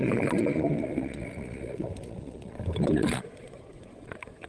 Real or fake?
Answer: fake